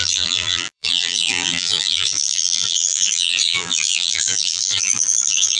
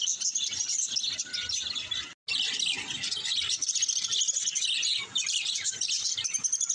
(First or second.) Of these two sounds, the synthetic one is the first